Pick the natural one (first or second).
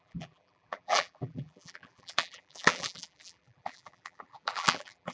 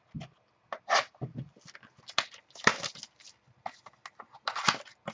second